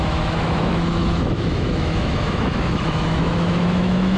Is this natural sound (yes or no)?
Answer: no